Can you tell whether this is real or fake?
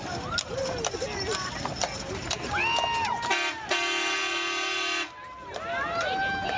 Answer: real